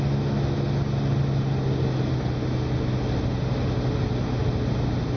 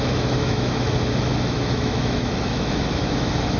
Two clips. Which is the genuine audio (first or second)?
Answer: first